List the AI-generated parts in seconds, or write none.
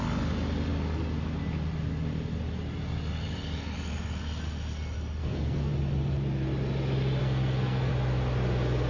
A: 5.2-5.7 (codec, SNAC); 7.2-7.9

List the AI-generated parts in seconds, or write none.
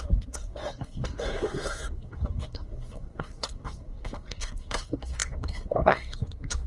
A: 0.0-6.7 (codec, SNAC)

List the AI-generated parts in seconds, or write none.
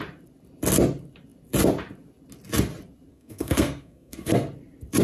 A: 3.1-4.5 (codec, SNAC)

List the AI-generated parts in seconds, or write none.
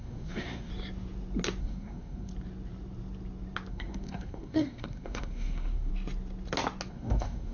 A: 0.0-0.7 (codec, SNAC); 1.6-2.3; 3.7-5.9; 6.9-7.5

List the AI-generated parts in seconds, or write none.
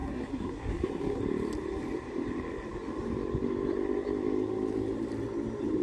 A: 0.0-1.2 (codec, SNAC)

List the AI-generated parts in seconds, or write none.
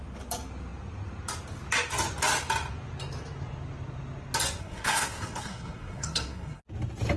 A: 4.6-6.6 (codec, SNAC)